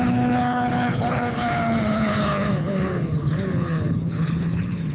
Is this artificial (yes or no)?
yes